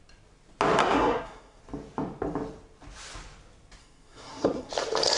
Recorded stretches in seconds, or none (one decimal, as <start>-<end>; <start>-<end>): 0.0-0.8; 1.6-3.8; 4.7-5.2